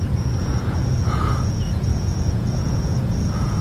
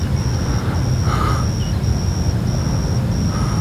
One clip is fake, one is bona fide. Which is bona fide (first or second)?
second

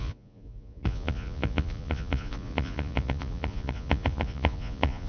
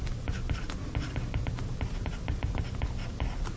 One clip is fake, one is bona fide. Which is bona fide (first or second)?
second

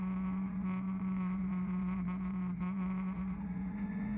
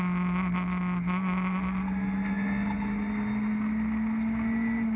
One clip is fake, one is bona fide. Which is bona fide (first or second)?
second